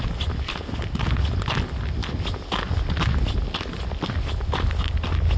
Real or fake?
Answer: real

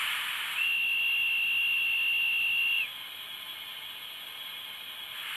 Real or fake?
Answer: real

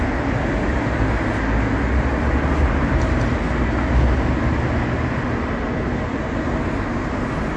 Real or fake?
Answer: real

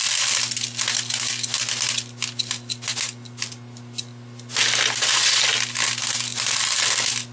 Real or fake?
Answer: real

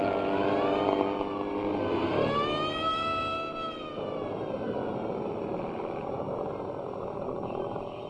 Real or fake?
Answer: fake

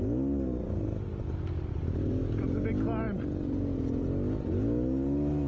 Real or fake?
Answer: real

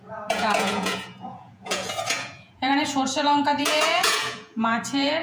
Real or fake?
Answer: fake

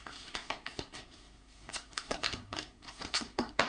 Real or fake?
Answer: fake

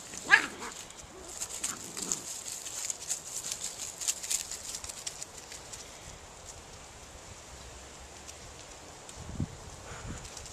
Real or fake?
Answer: real